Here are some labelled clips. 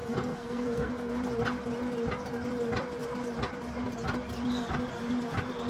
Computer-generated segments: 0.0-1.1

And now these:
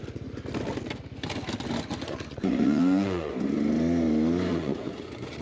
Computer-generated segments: 1.9-3.3; 4.5-5.4

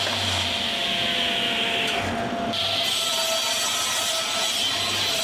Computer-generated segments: none